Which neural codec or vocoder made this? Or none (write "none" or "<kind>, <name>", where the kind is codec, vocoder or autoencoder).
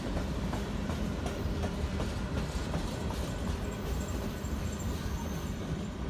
vocoder, BigVGAN v2